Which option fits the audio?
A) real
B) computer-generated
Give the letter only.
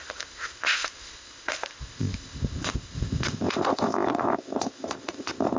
B